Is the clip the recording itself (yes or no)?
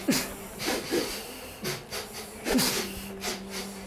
yes